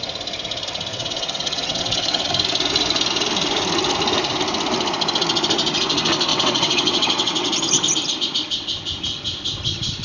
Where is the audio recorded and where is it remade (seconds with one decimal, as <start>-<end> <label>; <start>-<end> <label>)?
0.0-0.9 recorded; 0.9-2.3 remade; 2.3-6.3 recorded; 6.3-7.5 remade; 7.5-10.0 recorded